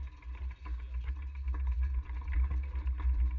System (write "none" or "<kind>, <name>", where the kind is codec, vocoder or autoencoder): none